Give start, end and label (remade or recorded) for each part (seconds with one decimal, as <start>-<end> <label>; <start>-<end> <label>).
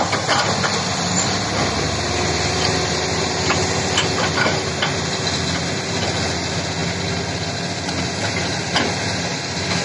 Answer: 0.0-9.8 recorded